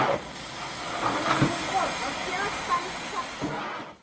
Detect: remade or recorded recorded